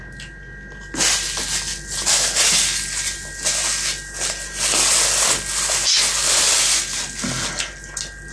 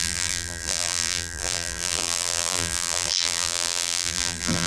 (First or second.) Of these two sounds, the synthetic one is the second